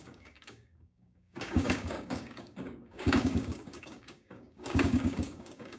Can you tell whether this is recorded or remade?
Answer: remade